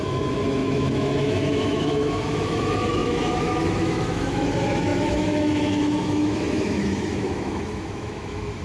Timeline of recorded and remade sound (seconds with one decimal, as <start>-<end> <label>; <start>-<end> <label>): 0.0-8.6 remade